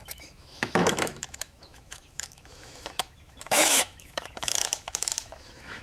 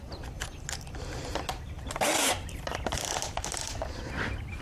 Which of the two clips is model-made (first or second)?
first